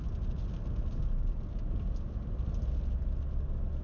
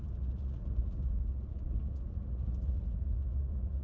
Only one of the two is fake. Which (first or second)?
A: second